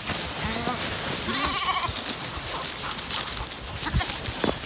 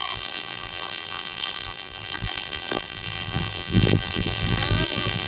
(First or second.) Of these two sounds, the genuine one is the first